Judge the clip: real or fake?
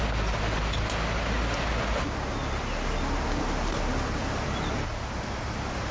real